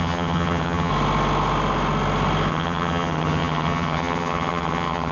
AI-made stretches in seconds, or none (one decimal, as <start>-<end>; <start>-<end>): 0.0-0.9; 2.5-5.1